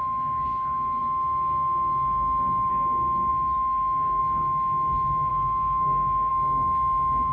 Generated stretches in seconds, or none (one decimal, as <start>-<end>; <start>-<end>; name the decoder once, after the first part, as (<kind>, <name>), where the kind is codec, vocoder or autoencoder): 5.3-6.3 (codec, DAC)